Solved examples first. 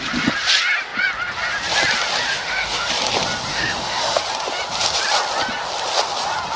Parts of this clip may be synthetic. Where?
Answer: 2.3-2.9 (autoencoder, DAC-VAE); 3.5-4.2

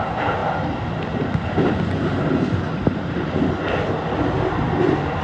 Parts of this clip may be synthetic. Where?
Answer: none

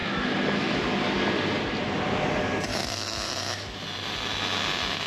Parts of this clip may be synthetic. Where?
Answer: 0.0-0.8 (autoencoder, DAC-VAE); 2.7-3.8

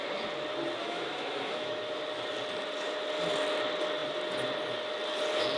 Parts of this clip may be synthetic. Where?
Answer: 0.8-2.0 (autoencoder, DAC-VAE)

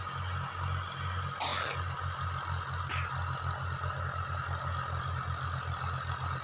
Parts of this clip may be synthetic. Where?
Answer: none

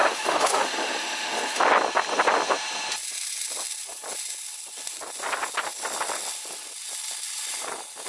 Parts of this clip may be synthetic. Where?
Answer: 0.0-1.6 (autoencoder, DAC-VAE)

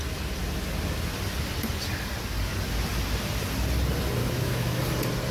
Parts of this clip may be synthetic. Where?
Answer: 4.2-4.8 (autoencoder, DAC-VAE)

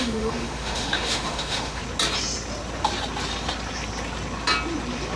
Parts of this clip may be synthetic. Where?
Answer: 0.0-1.8 (autoencoder, DAC-VAE)